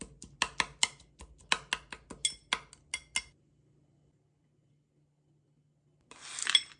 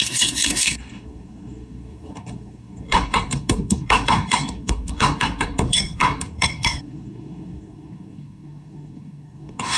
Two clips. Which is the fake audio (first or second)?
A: second